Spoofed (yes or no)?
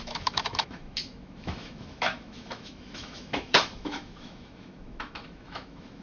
yes